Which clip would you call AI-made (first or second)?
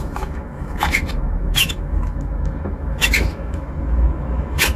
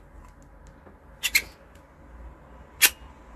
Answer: first